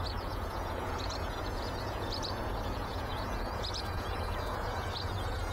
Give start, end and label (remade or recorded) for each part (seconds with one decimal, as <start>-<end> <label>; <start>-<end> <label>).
0.0-5.5 remade